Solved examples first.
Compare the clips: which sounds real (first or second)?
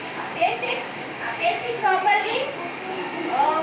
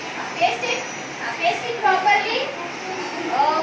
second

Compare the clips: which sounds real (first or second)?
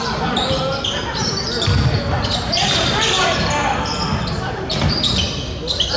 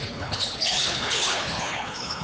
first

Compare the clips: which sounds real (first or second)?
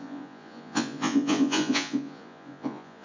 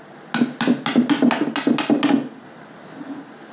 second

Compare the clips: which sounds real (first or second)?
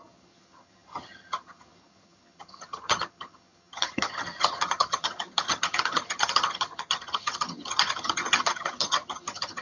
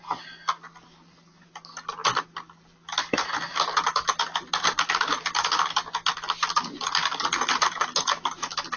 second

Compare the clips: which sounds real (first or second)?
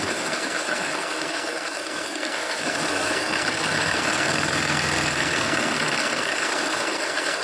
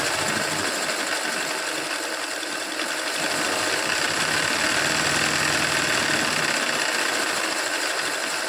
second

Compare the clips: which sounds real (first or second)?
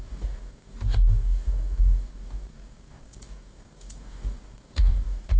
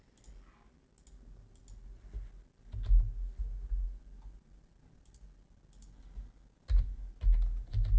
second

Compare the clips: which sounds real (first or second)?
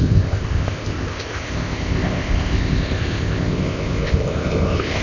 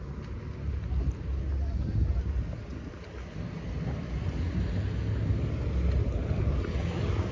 second